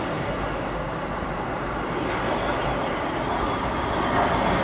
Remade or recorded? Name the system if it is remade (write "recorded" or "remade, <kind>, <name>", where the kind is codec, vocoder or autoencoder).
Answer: recorded